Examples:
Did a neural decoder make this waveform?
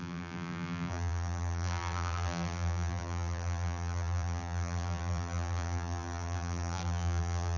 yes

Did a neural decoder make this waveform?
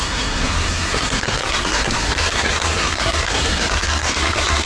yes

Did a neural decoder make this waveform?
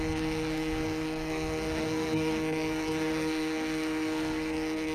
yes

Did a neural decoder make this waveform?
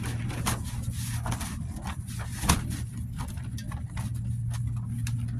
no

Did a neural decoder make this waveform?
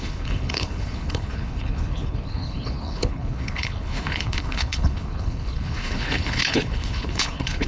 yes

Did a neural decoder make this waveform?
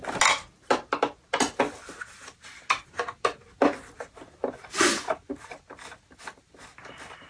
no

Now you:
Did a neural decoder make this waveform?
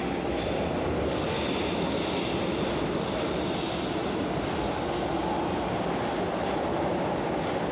no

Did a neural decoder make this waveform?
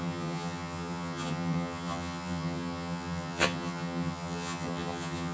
yes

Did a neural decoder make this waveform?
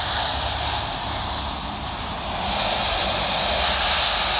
no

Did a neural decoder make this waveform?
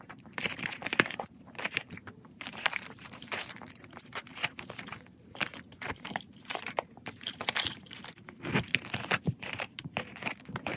yes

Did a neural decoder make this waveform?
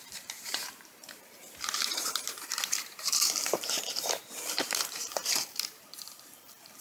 yes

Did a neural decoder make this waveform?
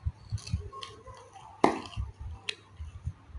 no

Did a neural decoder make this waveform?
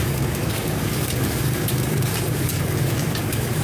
yes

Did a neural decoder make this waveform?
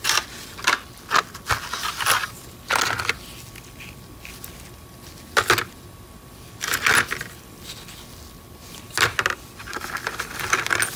no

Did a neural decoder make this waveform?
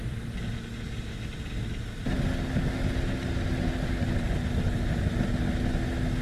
no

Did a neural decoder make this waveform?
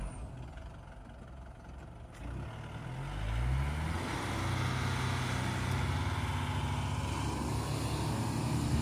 no